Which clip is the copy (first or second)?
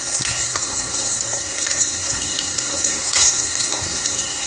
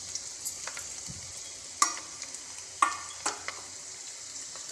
first